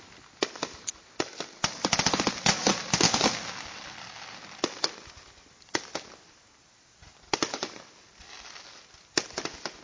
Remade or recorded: recorded